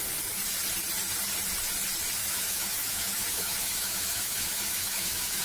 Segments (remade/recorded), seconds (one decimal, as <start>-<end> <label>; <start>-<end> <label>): 0.0-2.2 recorded; 2.2-5.4 remade